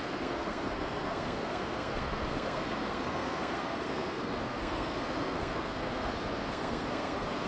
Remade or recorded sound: remade